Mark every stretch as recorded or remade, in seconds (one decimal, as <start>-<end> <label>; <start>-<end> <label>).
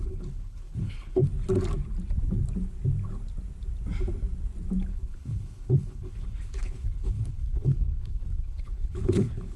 0.0-1.3 remade; 1.3-4.9 recorded; 4.9-9.6 remade